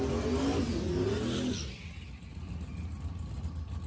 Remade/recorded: recorded